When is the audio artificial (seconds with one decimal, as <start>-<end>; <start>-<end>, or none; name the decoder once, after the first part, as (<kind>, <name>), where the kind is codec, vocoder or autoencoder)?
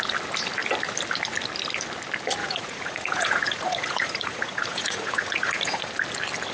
2.4-5.9 (vocoder, Vocos)